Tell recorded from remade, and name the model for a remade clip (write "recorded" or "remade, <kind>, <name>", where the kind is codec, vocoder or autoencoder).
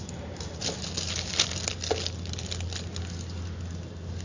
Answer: recorded